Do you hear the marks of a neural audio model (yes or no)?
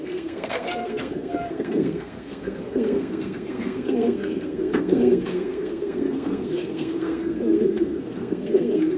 yes